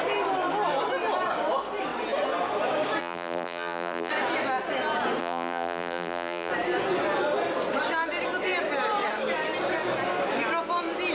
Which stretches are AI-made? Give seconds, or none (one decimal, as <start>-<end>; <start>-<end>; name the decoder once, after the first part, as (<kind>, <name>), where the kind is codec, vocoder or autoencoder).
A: 3.0-4.1 (vocoder, BigVGAN v2); 5.2-6.5